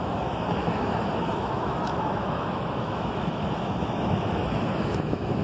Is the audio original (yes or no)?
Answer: no